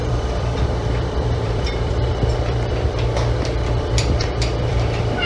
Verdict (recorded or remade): remade